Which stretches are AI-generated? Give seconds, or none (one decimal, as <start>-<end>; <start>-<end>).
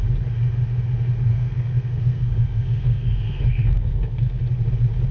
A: 1.3-4.4